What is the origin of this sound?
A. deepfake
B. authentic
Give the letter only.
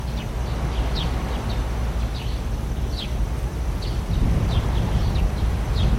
B